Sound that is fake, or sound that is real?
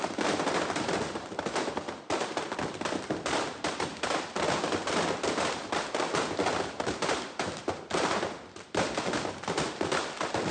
real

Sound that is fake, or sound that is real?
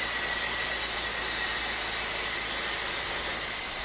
real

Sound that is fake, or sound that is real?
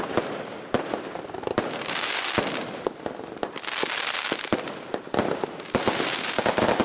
real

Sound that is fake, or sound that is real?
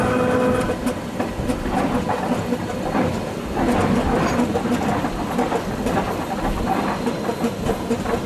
real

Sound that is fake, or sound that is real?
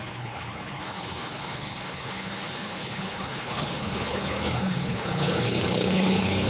fake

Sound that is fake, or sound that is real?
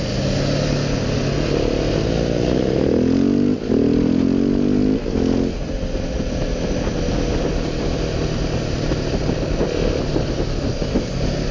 real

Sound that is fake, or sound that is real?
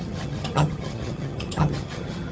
fake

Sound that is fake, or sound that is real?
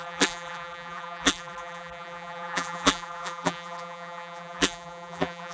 fake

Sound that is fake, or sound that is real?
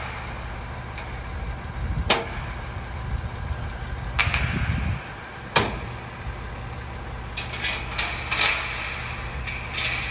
real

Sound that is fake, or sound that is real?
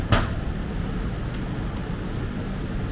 real